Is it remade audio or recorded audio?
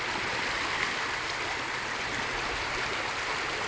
recorded